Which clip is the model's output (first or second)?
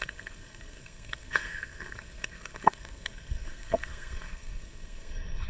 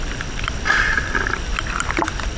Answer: first